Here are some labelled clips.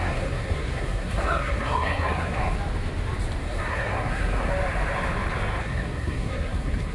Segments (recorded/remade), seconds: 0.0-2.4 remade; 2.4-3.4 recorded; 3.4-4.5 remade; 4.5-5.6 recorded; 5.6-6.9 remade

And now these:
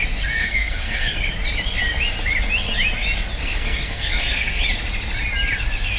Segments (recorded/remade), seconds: 0.0-0.4 recorded; 0.4-1.2 remade; 1.2-3.4 recorded; 3.4-4.6 remade; 4.6-6.0 recorded